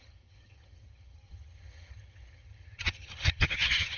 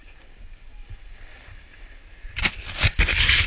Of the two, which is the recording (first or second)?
second